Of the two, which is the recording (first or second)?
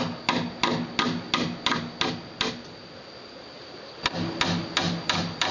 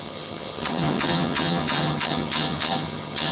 first